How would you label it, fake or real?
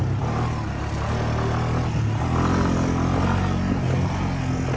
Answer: real